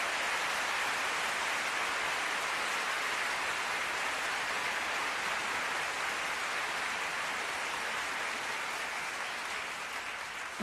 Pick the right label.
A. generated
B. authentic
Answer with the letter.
B